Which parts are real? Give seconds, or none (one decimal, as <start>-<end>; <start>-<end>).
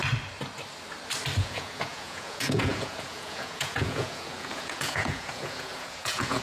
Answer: 0.0-1.4